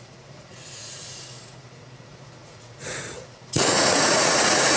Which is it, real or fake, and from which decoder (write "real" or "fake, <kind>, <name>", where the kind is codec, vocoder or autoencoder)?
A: fake, vocoder, Vocos